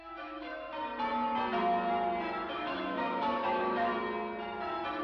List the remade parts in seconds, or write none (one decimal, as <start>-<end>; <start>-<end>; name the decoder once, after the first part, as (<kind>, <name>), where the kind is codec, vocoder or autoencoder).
0.0-0.7 (autoencoder, DAC-VAE); 2.5-3.9